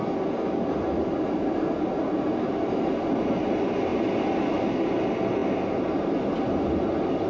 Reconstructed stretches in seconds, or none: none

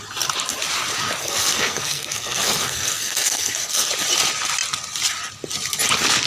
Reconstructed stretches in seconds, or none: 1.2-3.9 (codec, SNAC)

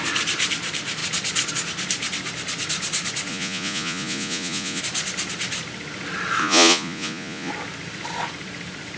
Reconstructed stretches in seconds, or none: 3.3-4.8 (vocoder, Vocos); 6.4-7.5

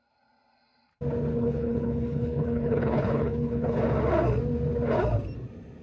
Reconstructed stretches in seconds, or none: 1.3-3.8 (codec, HILCodec)